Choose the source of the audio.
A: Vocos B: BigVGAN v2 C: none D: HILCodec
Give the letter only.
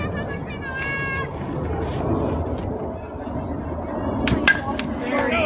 C